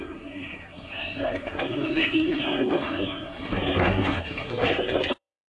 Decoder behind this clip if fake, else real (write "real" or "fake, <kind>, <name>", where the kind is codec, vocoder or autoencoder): fake, codec, SNAC